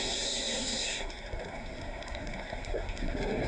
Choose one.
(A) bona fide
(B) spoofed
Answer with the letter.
B